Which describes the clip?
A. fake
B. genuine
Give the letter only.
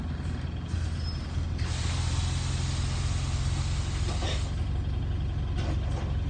B